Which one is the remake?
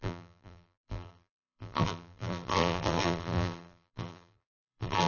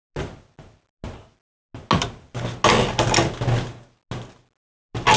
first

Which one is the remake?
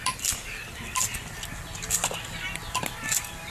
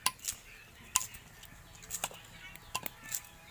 first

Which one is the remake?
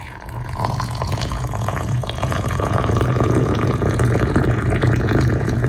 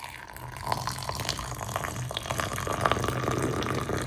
first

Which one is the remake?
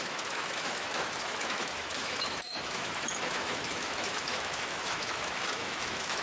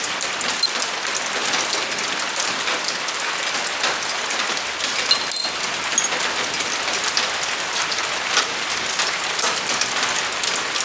first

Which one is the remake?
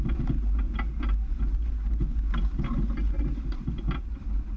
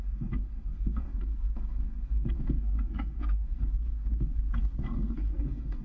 second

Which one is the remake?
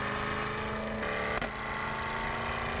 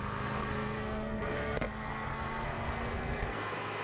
second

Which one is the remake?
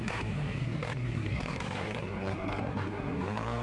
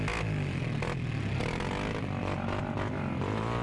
first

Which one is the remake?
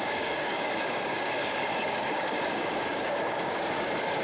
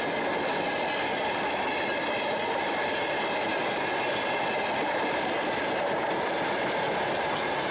first